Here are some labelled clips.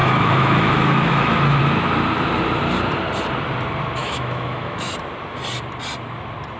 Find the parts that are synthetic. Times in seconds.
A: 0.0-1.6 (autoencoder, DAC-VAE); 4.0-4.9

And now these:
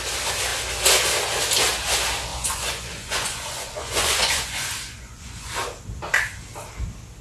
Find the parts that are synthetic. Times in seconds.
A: 2.3-5.5 (vocoder, Vocos)

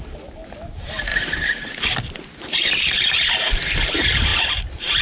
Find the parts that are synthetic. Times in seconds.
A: 1.1-3.5 (vocoder, BigVGAN v2)

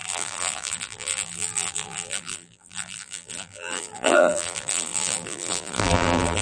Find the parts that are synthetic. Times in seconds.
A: 0.0-6.4 (vocoder, BigVGAN v2)

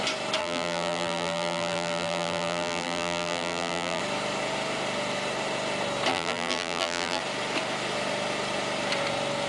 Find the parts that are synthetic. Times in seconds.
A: 0.4-4.0 (vocoder, BigVGAN v2); 6.1-7.2

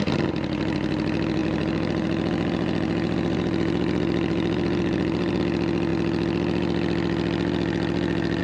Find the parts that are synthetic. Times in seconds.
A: 1.4-5.4 (vocoder, BigVGAN v2)